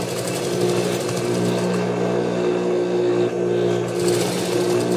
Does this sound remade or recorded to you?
recorded